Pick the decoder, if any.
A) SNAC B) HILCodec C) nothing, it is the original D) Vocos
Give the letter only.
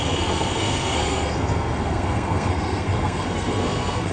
A